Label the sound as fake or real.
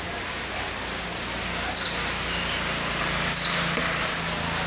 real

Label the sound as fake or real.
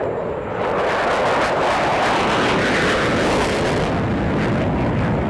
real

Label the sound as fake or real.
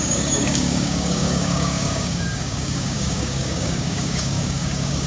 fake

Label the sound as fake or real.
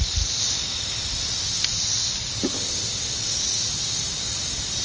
fake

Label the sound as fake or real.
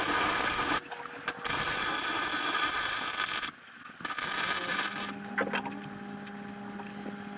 real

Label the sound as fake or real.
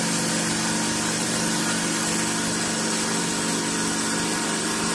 real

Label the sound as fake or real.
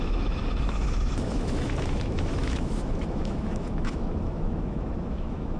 fake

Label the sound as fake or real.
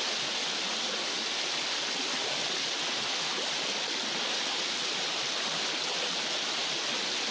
real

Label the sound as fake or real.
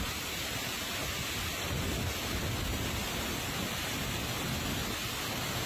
real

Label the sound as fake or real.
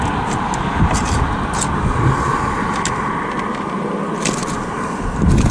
real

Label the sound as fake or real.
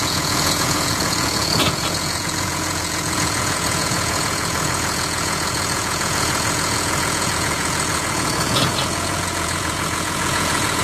fake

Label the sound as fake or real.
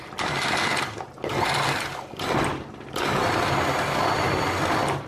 real